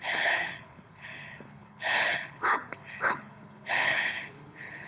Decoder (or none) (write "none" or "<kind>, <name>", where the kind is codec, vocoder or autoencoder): codec, HILCodec